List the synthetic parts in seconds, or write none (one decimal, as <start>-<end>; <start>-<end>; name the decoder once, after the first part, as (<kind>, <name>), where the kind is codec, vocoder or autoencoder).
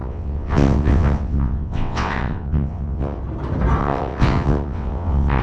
0.0-3.2 (vocoder, WaveNeXt); 3.8-5.4